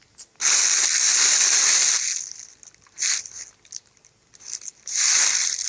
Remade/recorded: recorded